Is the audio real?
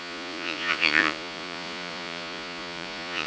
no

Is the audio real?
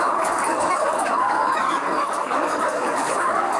no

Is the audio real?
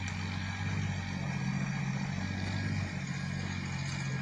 yes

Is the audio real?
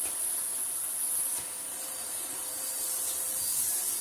no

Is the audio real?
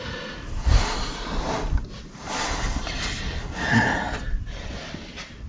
yes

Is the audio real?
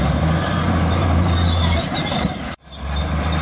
no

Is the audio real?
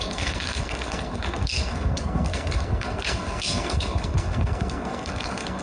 no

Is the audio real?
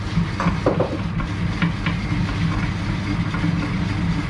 yes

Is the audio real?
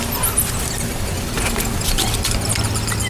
yes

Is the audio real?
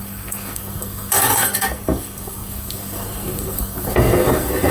no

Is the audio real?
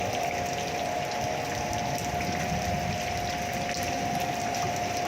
yes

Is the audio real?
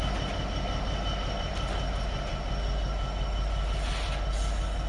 yes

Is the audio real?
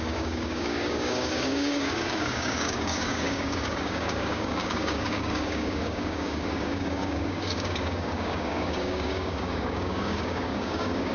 no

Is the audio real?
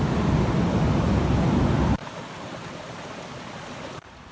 yes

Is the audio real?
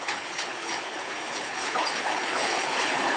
no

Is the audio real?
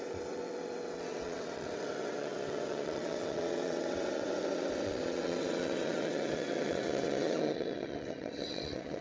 no